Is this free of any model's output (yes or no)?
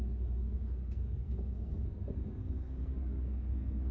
no